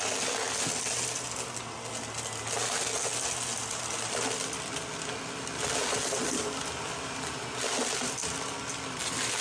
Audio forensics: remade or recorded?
recorded